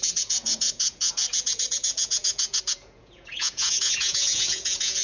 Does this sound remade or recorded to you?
remade